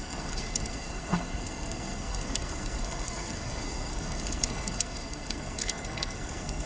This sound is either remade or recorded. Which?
remade